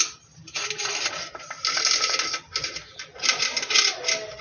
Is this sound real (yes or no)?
yes